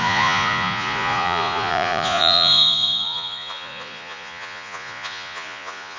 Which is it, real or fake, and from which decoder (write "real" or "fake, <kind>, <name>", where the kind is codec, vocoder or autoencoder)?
fake, vocoder, Vocos